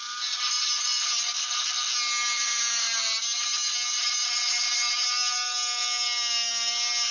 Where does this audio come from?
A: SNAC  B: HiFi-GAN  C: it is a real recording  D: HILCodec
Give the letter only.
C